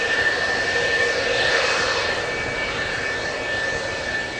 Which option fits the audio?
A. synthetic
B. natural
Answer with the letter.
B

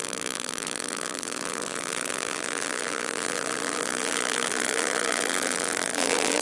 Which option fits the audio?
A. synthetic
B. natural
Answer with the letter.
A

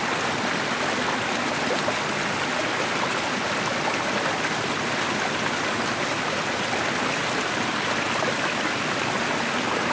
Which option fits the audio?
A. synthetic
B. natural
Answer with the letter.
B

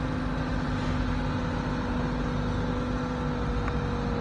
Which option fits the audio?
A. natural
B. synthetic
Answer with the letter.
A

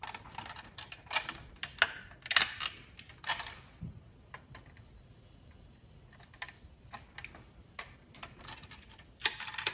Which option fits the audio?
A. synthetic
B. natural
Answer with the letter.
B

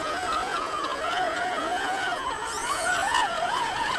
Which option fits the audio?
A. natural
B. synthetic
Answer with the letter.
B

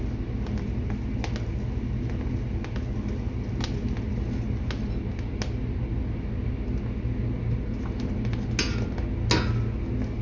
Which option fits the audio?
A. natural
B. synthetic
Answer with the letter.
A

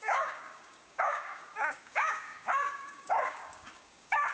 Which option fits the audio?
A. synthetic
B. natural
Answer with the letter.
A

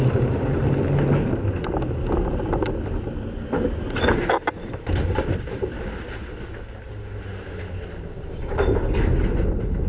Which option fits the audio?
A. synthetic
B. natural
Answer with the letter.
B